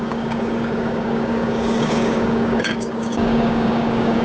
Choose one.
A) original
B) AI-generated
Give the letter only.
B